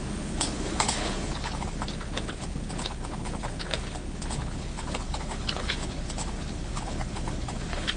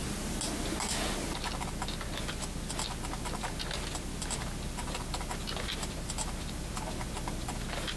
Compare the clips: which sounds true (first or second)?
second